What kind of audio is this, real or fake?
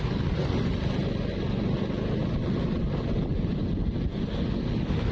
real